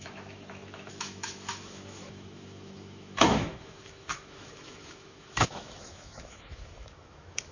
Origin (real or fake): fake